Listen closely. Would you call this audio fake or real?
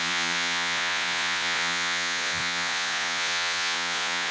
fake